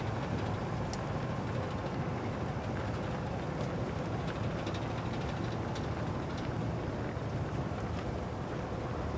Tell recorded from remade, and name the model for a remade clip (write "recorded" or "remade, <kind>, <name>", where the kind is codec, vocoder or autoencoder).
recorded